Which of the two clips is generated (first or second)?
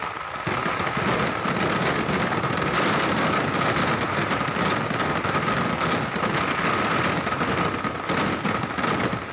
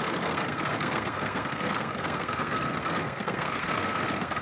second